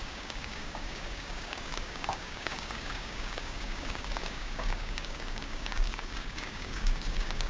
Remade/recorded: remade